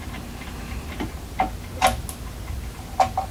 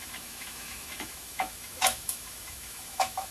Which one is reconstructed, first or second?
second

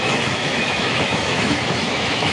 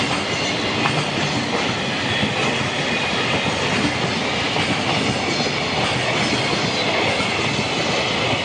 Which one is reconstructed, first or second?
first